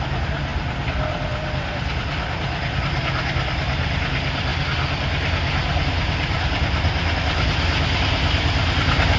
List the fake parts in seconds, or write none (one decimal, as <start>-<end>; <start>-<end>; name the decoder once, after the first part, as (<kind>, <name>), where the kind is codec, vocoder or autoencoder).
none